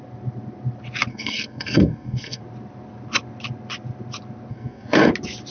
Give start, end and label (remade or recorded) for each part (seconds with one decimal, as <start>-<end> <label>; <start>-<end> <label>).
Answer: 0.0-1.1 recorded; 1.1-2.4 remade; 2.4-4.5 recorded; 4.5-5.1 remade; 5.1-5.5 recorded